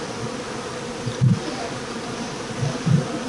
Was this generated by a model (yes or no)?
no